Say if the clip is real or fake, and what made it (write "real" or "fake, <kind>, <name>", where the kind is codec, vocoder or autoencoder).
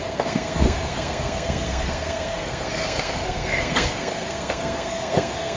fake, codec, SNAC